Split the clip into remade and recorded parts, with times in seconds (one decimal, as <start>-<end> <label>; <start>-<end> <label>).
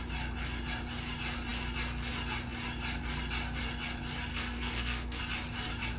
0.0-4.3 recorded; 4.3-5.2 remade; 5.2-6.0 recorded